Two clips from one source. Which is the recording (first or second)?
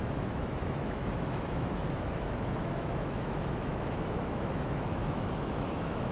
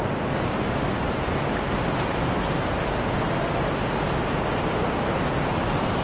second